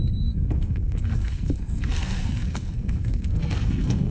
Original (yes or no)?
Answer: no